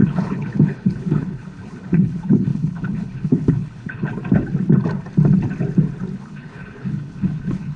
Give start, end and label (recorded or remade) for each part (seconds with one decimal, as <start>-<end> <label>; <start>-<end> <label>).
0.0-4.1 remade; 4.1-6.2 recorded; 6.2-7.8 remade